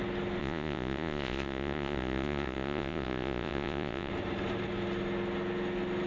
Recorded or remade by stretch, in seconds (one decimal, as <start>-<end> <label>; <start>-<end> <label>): 0.0-0.4 recorded; 0.4-4.1 remade; 4.1-6.1 recorded